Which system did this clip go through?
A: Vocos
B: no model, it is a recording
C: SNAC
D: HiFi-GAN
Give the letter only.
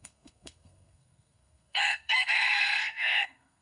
C